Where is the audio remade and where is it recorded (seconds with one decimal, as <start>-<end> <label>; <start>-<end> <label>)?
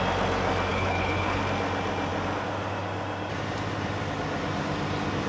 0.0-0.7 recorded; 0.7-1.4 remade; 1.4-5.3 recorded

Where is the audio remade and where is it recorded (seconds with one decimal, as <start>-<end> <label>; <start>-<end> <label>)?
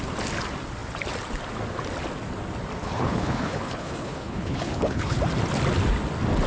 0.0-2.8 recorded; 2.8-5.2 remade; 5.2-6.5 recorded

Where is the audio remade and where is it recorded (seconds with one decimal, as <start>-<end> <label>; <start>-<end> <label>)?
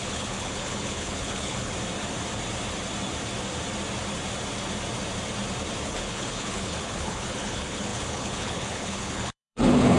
0.0-1.7 remade; 1.7-5.8 recorded; 5.8-10.0 remade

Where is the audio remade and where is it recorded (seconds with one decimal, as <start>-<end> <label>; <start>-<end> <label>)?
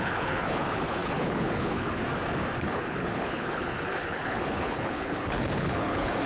0.0-2.0 remade; 2.0-2.6 recorded; 2.6-6.3 remade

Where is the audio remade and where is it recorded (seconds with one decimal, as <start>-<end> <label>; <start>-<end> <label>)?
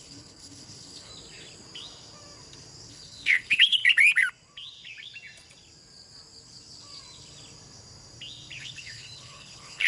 0.0-1.1 remade; 1.1-2.9 recorded; 2.9-3.8 remade; 3.8-8.6 recorded; 8.6-9.9 remade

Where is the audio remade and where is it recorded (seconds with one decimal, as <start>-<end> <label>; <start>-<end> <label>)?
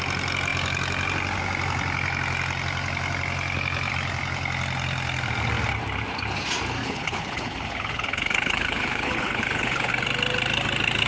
0.0-6.8 recorded; 6.8-9.9 remade; 9.9-11.1 recorded